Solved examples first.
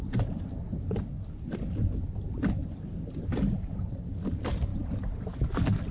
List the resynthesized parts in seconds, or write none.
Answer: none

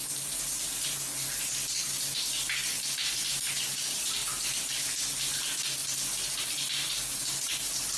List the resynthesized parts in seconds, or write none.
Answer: none